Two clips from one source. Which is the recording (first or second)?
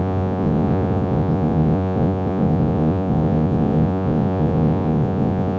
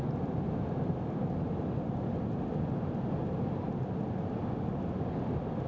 second